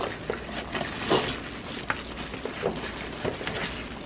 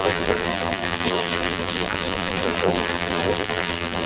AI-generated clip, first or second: second